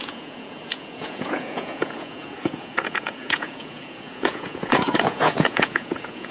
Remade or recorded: remade